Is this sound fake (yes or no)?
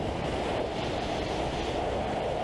no